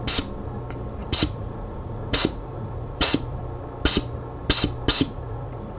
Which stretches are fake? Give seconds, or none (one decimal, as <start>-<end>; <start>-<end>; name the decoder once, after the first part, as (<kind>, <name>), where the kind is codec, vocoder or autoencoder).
1.0-3.4 (vocoder, Vocos); 4.9-5.8